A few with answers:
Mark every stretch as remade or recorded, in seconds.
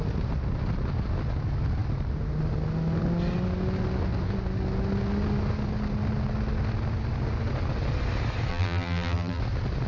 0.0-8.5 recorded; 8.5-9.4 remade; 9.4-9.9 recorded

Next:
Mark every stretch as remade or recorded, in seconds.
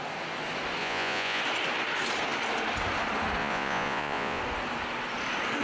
0.0-0.8 recorded; 0.8-1.4 remade; 1.4-3.4 recorded; 3.4-4.4 remade; 4.4-5.6 recorded